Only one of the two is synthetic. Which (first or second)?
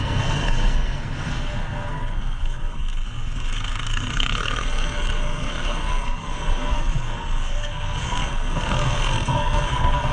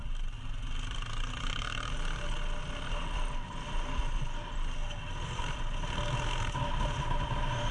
first